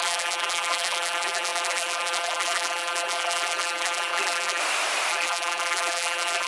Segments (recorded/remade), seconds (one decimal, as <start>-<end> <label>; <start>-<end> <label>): 0.0-4.6 remade; 4.6-5.1 recorded; 5.1-6.5 remade